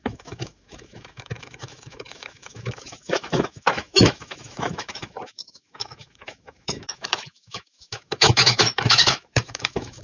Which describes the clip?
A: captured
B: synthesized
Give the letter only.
B